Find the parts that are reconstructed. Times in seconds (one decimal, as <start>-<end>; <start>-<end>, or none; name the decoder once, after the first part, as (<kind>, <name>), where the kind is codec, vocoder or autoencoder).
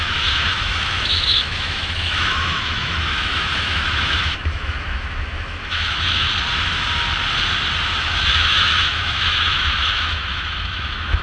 0.0-6.3 (autoencoder, DAC-VAE); 8.0-11.2